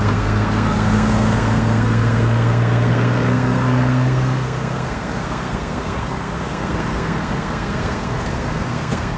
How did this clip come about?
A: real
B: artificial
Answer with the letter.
B